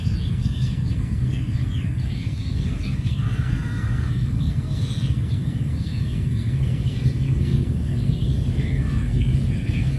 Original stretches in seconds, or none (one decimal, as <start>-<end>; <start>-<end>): none